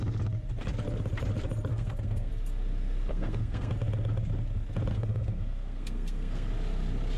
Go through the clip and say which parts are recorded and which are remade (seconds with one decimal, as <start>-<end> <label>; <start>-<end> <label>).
0.0-1.7 recorded; 1.7-2.3 remade; 2.3-3.1 recorded; 3.1-3.7 remade; 3.7-4.9 recorded; 4.9-6.5 remade; 6.5-7.2 recorded